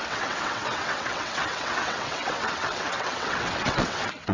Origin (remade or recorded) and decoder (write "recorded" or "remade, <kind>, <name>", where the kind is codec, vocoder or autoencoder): remade, vocoder, WaveNeXt